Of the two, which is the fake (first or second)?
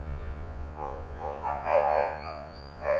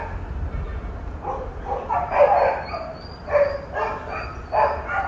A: first